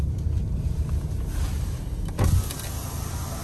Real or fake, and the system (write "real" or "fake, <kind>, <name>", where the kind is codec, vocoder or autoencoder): real